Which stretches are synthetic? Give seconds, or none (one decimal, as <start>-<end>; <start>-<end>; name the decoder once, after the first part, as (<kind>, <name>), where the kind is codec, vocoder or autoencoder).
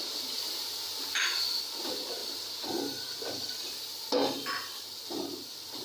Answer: none